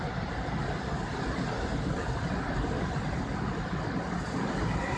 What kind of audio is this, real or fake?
real